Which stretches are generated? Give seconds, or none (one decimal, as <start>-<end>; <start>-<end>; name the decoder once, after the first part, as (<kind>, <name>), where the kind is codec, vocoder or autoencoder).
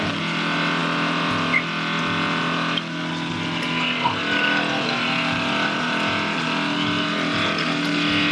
none